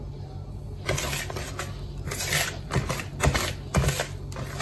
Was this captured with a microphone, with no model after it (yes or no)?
yes